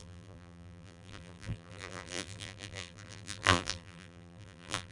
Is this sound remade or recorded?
remade